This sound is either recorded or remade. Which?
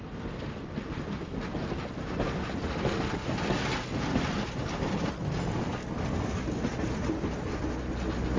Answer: recorded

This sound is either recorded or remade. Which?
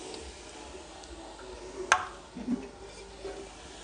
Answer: recorded